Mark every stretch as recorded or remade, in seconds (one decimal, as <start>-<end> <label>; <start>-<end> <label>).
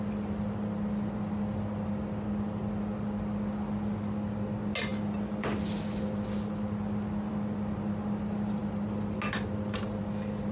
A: 0.0-10.5 recorded